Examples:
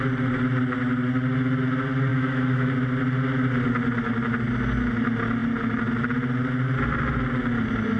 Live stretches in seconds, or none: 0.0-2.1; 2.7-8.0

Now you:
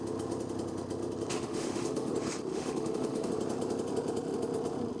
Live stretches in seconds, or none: 0.0-1.3; 2.1-2.5; 3.3-5.0

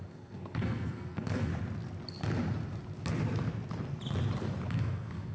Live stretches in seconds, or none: 1.5-4.7

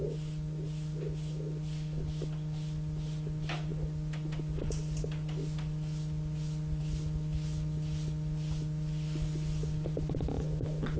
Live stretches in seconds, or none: 0.0-11.0

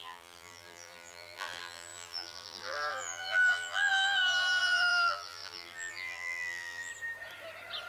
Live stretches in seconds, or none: 6.9-7.9

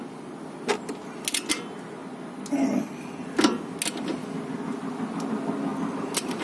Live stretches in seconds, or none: 0.0-6.4